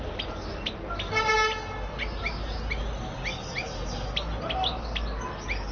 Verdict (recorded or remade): recorded